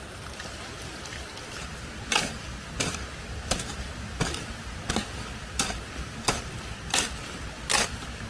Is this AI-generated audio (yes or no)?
no